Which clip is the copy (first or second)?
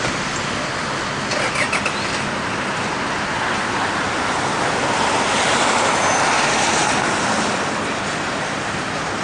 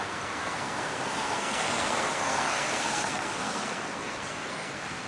second